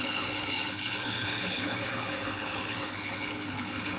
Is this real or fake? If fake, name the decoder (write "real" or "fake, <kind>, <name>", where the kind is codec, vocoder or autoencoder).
fake, codec, HILCodec